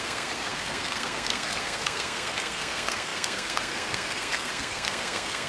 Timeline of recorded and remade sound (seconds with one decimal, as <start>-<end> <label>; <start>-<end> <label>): 0.0-5.5 remade